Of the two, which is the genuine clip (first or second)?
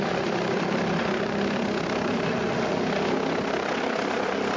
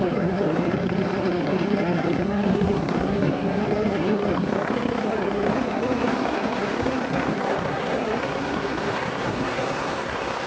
first